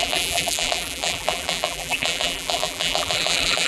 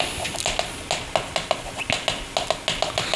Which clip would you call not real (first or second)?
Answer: first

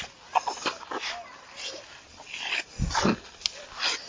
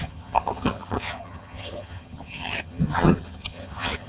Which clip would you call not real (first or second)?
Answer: second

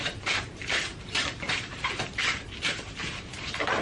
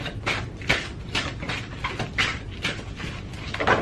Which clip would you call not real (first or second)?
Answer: first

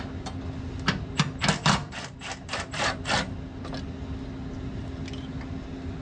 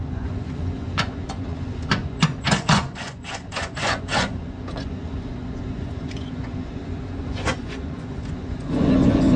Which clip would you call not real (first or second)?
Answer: second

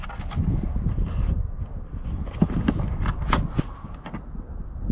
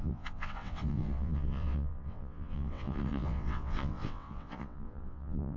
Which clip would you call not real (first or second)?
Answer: second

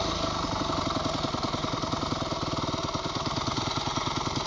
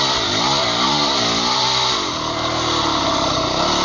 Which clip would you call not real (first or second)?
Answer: first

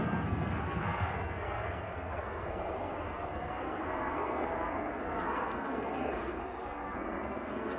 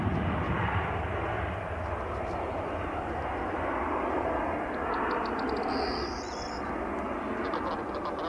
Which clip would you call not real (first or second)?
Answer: first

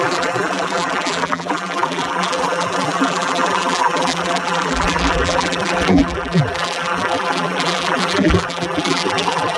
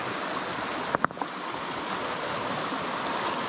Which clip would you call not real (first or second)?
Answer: first